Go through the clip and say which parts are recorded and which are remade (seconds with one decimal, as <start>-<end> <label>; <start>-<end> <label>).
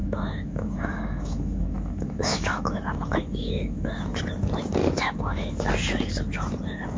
0.0-4.2 remade; 4.2-4.8 recorded; 4.8-5.7 remade; 5.7-7.0 recorded